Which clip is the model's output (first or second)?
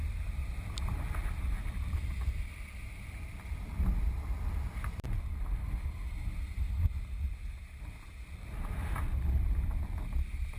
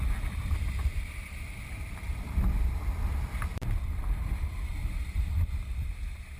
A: second